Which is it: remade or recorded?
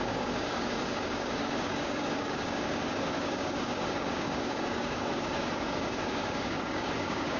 remade